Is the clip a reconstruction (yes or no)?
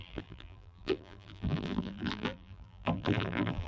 yes